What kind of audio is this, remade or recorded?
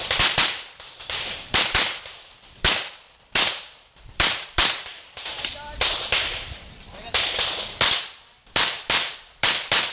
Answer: remade